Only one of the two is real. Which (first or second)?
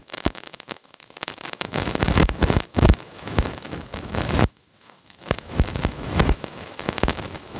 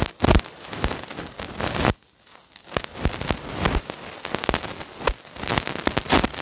second